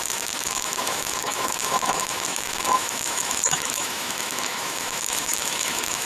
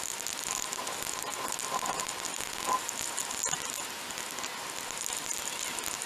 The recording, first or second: second